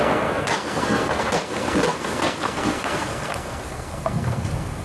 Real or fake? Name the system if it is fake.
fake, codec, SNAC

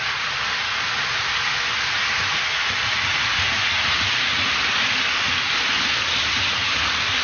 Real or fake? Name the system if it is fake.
real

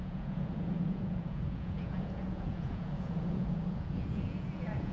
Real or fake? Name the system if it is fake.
fake, vocoder, Vocos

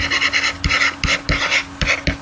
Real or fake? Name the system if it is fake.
real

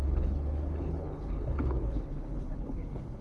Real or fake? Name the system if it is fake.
fake, codec, HILCodec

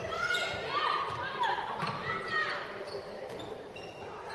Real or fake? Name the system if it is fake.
real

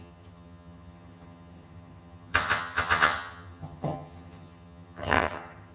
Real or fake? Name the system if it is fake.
fake, vocoder, HiFi-GAN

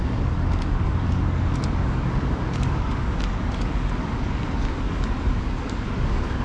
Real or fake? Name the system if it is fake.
fake, codec, DAC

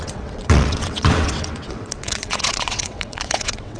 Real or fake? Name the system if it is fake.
fake, vocoder, WaveNeXt